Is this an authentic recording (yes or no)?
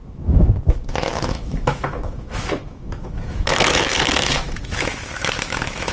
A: no